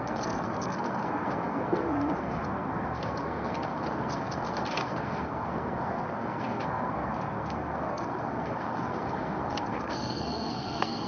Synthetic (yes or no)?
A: yes